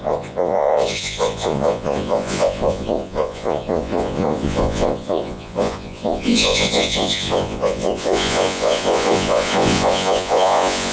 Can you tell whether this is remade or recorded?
remade